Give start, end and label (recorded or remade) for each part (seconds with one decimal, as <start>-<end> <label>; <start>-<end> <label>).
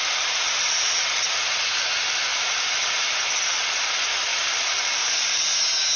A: 0.0-2.3 recorded; 2.3-3.0 remade; 3.0-4.3 recorded; 4.3-5.4 remade; 5.4-6.0 recorded